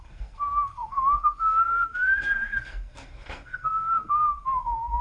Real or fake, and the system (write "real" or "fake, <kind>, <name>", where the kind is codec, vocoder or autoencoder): fake, codec, SNAC